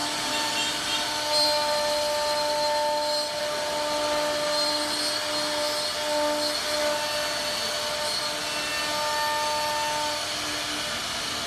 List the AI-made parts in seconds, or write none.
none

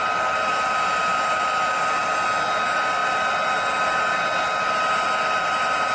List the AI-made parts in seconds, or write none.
none

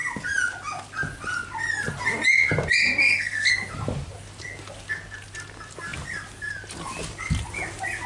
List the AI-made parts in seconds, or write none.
3.0-3.5 (codec, SNAC)

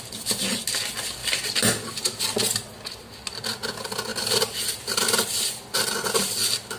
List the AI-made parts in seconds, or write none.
none

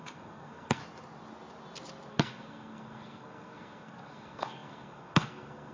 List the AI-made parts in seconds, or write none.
0.0-0.8 (codec, SNAC); 2.1-5.7